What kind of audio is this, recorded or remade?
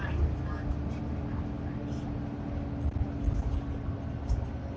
recorded